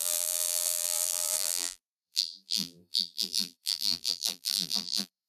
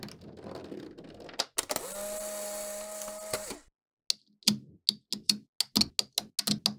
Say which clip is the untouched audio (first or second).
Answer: second